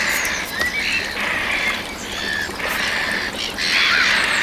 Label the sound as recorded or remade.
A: recorded